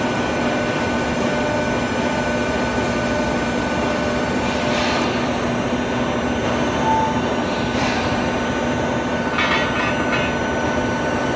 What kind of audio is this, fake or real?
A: real